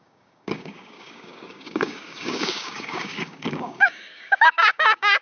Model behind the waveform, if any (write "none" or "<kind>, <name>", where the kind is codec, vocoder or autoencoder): codec, DAC